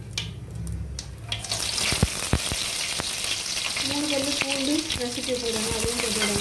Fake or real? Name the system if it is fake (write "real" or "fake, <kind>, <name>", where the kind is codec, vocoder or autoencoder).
real